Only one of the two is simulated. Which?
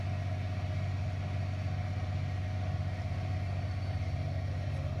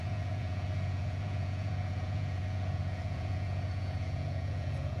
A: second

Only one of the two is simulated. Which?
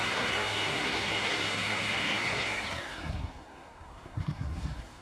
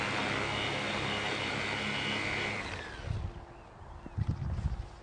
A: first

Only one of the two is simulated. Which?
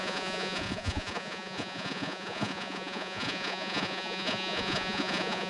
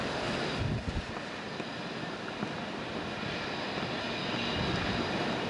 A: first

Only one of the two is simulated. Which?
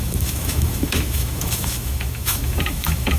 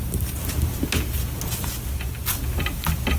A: first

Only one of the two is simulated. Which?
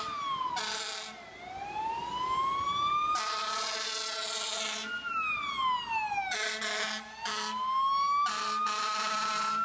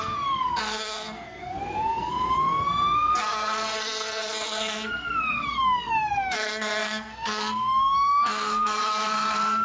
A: second